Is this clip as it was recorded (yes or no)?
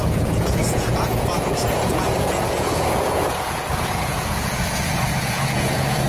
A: no